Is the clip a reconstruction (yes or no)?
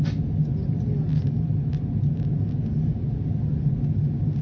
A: no